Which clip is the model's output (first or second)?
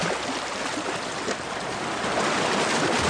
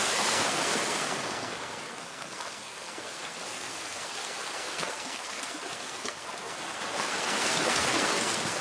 second